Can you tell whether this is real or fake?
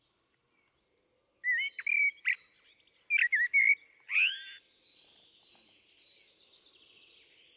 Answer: real